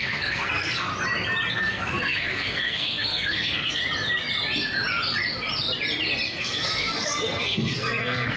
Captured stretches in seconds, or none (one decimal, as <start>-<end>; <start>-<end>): 0.9-1.5; 3.8-6.4